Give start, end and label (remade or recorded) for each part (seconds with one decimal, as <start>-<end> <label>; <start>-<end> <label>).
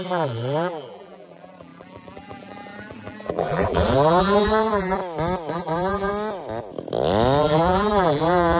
0.0-5.0 remade; 5.0-5.5 recorded; 5.5-6.1 remade; 6.1-7.4 recorded; 7.4-8.6 remade